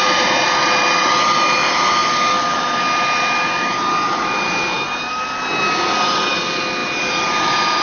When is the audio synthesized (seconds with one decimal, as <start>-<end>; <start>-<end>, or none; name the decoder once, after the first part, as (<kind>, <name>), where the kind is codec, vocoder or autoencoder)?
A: none